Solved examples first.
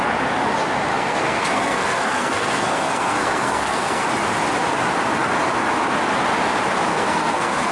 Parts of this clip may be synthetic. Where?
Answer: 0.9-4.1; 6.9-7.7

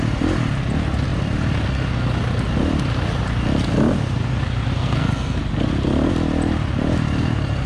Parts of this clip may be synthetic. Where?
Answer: 4.8-5.4